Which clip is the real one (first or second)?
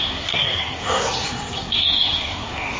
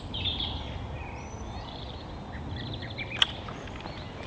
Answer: second